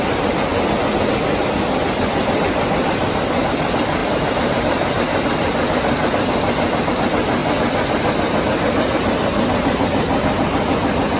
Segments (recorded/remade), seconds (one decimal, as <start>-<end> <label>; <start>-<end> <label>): 0.0-4.0 recorded; 4.0-6.9 remade; 6.9-11.2 recorded